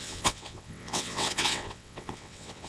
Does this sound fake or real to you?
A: fake